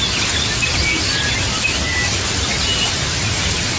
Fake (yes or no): no